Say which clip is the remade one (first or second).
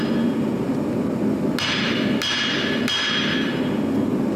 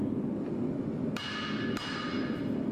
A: second